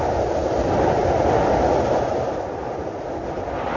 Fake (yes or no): no